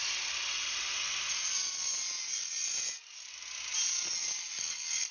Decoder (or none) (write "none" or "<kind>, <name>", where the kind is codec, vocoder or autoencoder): none